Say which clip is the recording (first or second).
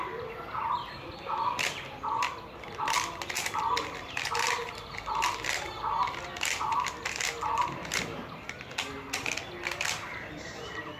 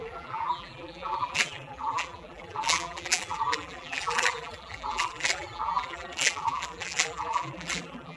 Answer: first